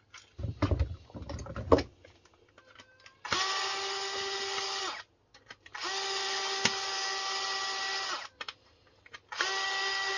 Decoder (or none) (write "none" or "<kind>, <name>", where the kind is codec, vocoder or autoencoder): none